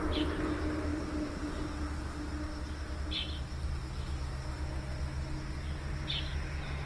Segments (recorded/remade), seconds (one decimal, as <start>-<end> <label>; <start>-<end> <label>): 0.0-6.9 recorded